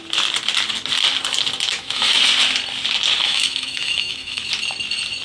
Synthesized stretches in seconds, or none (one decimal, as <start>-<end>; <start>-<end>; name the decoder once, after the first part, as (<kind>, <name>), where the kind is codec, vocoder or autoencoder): 1.7-2.2 (autoencoder, DAC-VAE); 3.2-4.5